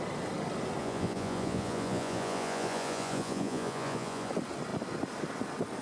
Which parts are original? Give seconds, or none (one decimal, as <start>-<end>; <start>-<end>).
0.0-0.8; 4.3-5.8